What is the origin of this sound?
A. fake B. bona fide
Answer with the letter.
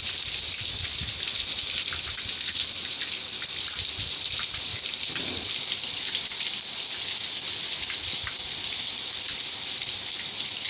B